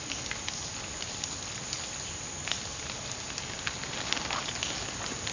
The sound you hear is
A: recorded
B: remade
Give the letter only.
A